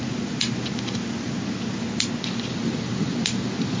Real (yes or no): yes